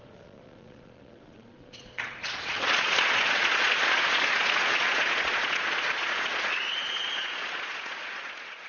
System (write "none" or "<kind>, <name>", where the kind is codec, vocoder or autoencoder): vocoder, Vocos